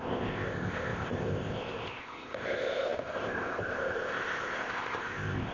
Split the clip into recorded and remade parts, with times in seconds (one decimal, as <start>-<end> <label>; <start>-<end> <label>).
0.0-5.5 remade